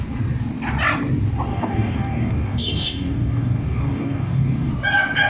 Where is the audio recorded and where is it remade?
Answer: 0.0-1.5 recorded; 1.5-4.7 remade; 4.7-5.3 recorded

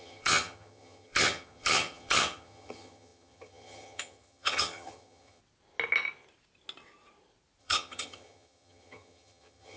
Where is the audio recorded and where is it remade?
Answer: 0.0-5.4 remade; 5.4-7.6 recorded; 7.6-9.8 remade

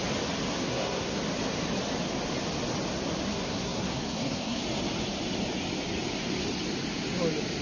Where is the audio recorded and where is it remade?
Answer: 0.0-0.5 recorded; 0.5-1.2 remade; 1.2-3.3 recorded; 3.3-4.6 remade; 4.6-7.6 recorded

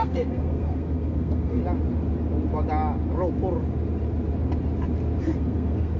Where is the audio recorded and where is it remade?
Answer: 0.0-1.6 remade; 1.6-5.2 recorded; 5.2-6.0 remade

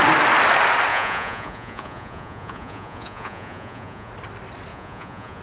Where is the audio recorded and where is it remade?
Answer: 0.0-0.9 recorded; 0.9-4.1 remade; 4.1-4.7 recorded; 4.7-5.4 remade